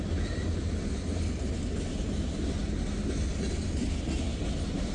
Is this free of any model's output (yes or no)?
yes